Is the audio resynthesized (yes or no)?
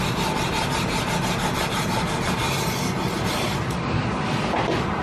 no